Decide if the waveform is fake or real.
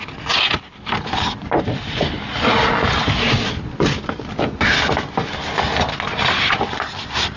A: real